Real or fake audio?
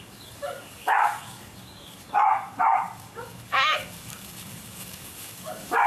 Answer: fake